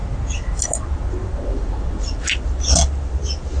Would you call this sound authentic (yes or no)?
yes